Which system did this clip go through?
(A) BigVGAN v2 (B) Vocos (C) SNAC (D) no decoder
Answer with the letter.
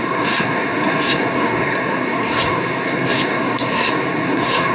C